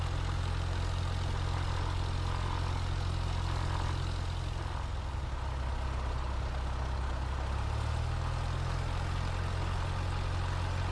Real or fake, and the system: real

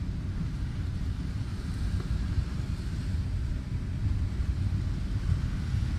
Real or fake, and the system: real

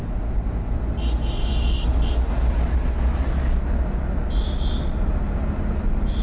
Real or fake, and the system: real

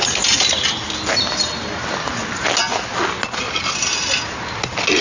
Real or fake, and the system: real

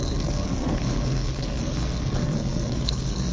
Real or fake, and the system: fake, codec, SNAC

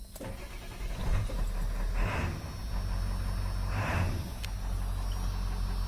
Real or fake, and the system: real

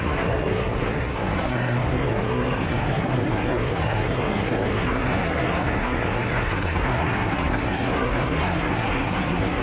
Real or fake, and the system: fake, codec, SNAC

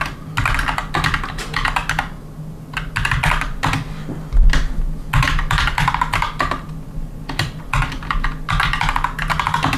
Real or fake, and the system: real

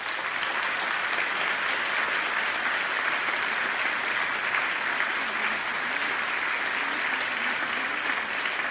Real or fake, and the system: real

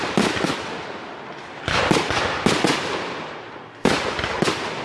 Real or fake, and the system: real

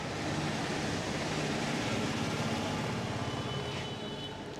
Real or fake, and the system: real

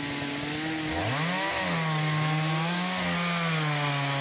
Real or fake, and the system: real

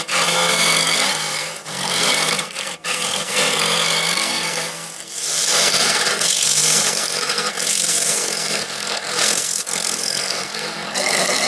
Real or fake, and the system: fake, codec, SNAC